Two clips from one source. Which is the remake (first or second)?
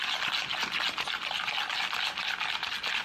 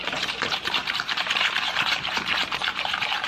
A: second